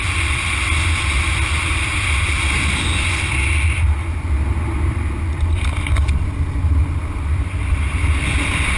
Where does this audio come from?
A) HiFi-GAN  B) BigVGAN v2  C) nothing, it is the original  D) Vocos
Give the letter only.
C